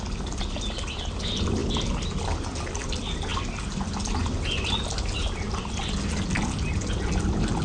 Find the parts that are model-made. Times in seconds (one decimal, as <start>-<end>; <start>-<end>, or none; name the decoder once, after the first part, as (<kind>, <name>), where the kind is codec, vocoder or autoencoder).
none